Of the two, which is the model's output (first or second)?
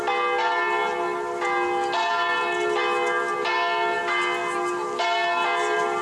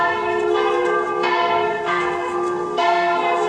second